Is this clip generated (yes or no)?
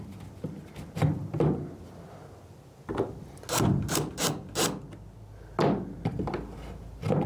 no